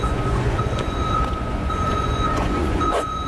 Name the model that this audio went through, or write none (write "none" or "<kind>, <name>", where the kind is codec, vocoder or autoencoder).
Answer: vocoder, Vocos